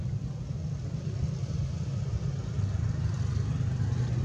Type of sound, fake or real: real